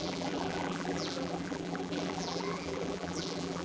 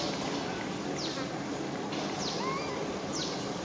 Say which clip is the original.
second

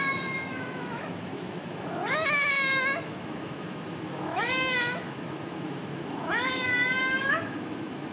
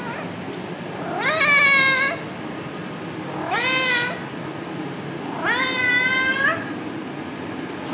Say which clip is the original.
second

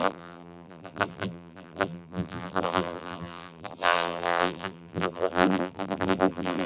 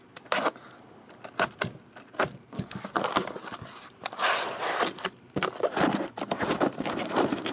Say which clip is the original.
second